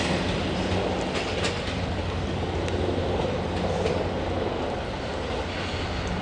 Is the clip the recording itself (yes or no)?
yes